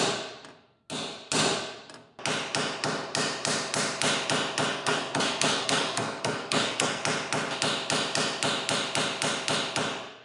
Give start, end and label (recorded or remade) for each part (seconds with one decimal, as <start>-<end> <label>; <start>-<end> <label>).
0.0-4.7 recorded; 4.7-7.0 remade; 7.0-10.2 recorded